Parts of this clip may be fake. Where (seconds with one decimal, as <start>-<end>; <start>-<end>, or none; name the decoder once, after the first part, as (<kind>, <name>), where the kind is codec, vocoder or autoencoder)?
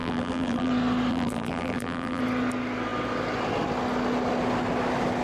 0.0-0.7 (vocoder, BigVGAN v2); 1.1-2.2